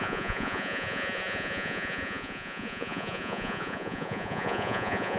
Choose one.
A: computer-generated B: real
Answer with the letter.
A